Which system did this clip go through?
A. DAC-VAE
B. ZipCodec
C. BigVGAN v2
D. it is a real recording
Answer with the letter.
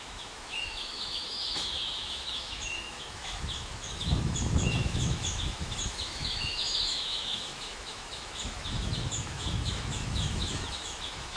A